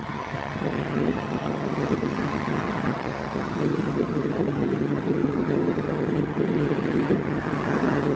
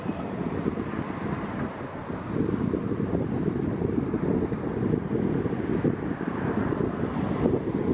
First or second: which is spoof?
first